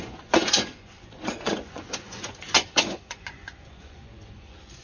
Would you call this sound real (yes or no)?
no